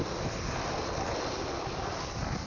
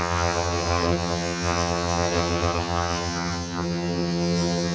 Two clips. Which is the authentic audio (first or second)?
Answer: first